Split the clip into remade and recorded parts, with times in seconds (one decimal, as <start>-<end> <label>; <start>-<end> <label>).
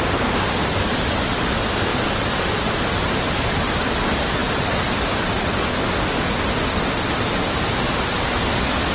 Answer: 0.0-8.9 recorded